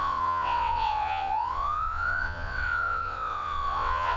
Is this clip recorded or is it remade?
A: remade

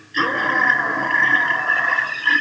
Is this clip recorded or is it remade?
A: recorded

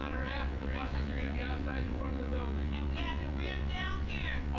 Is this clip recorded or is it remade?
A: remade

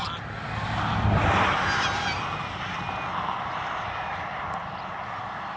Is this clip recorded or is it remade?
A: recorded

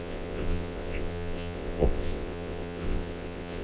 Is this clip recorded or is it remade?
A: remade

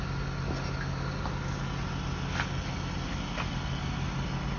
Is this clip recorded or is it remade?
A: recorded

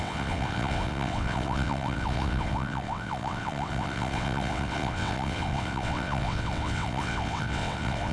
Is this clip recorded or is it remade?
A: remade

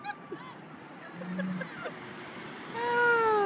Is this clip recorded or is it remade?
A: recorded